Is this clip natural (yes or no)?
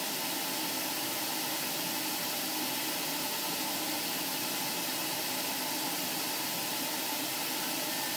yes